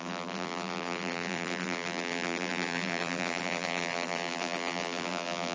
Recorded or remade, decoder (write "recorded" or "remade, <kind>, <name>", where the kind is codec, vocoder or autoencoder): remade, vocoder, BigVGAN v2